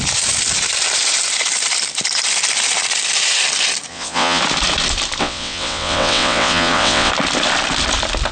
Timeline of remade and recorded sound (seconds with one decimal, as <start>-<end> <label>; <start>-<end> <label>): 0.0-3.9 recorded; 3.9-4.4 remade; 4.4-5.2 recorded; 5.2-7.1 remade; 7.1-8.3 recorded